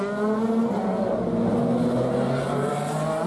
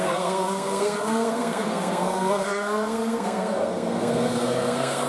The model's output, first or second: second